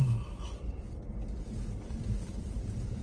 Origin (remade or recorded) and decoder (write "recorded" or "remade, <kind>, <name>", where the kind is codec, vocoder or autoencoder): recorded